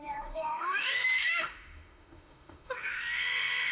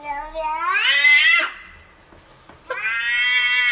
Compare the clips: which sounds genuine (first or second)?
second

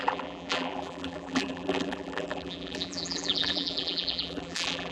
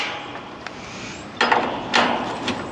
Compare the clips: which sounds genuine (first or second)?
second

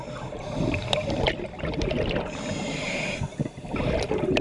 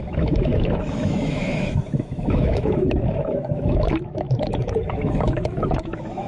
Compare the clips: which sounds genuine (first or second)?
first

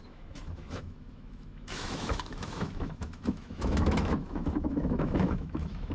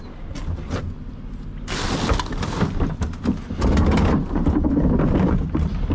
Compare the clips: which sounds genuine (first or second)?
second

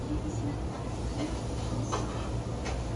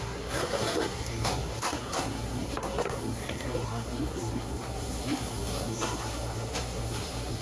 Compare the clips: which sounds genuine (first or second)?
first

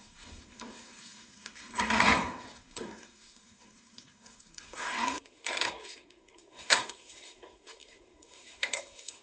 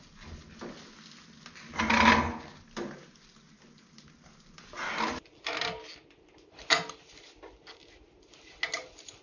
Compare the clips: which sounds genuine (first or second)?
second